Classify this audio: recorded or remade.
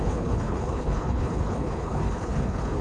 remade